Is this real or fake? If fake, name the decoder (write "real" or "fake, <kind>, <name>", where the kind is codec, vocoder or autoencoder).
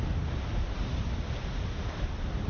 real